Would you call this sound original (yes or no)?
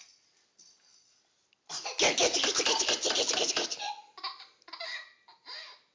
yes